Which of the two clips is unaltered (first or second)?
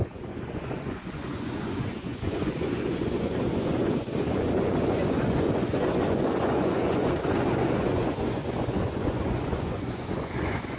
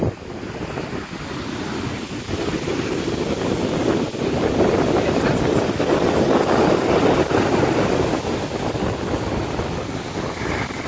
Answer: second